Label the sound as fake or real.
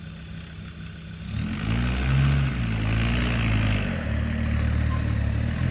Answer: real